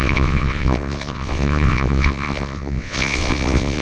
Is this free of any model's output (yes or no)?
no